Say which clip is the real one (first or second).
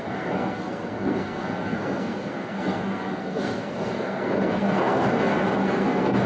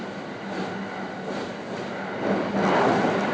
second